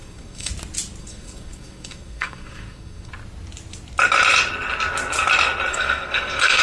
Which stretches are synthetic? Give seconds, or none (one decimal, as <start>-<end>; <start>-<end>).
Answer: 0.0-0.5; 1.0-3.1; 5.7-6.6